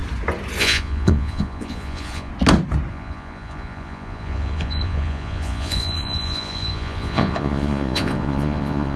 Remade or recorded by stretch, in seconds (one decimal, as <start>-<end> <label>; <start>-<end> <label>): 0.0-0.6 recorded; 0.6-2.3 remade; 2.3-2.9 recorded; 2.9-9.0 remade